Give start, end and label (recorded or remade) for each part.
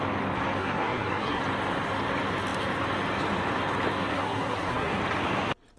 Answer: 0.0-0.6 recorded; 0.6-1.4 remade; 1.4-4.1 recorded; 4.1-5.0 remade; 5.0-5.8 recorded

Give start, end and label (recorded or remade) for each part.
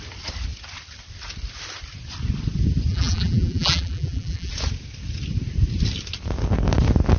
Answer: 0.0-2.9 recorded; 2.9-4.5 remade; 4.5-7.2 recorded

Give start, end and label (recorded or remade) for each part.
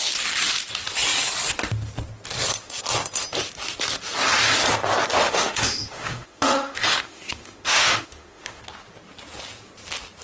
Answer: 0.0-5.2 recorded; 5.2-8.6 remade; 8.6-10.2 recorded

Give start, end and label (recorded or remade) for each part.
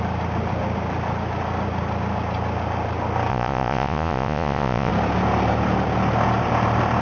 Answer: 0.0-3.3 recorded; 3.3-4.9 remade; 4.9-7.0 recorded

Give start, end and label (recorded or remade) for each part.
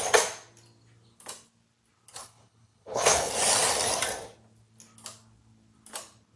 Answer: 0.0-2.2 recorded; 2.2-3.3 remade; 3.3-6.4 recorded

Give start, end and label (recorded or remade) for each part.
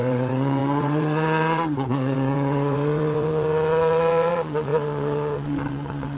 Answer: 0.0-6.2 remade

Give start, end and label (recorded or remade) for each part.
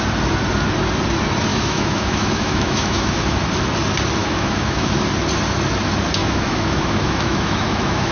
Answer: 0.0-1.5 recorded; 1.5-3.4 remade; 3.4-4.2 recorded; 4.2-4.9 remade; 4.9-6.2 recorded; 6.2-8.1 remade